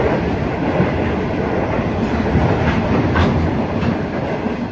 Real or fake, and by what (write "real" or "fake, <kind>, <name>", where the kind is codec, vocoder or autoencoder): real